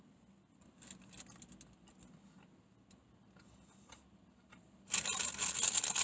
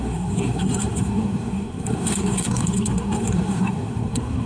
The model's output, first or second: second